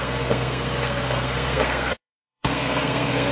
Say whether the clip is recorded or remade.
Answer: remade